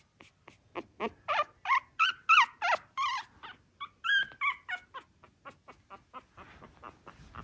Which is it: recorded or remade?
recorded